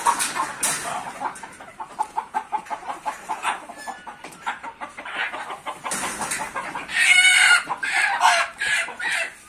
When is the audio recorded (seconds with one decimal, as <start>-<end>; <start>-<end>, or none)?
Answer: 0.0-1.7; 5.0-9.5